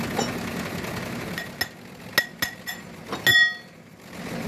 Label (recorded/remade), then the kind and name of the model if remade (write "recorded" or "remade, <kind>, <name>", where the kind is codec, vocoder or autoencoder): recorded